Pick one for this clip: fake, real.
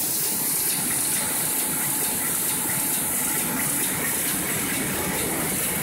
real